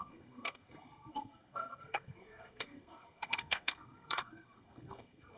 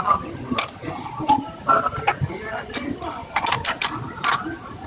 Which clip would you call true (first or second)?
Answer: second